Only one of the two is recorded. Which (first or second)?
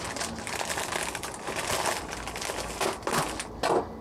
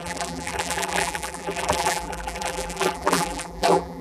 first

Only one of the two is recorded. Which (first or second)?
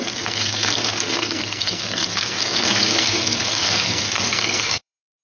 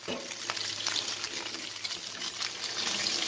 second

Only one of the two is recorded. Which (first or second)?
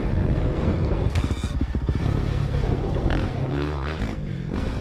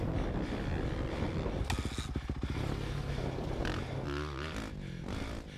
second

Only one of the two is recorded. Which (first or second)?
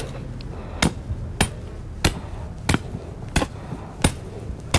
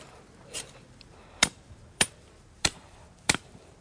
first